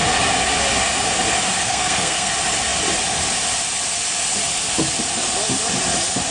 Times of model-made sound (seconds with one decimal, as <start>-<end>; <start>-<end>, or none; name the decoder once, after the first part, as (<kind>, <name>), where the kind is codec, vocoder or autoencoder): 1.6-2.3 (codec, SNAC)